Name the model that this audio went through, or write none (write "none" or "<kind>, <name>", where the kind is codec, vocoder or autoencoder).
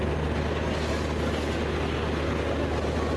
none